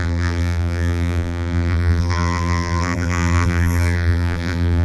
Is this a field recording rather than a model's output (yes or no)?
no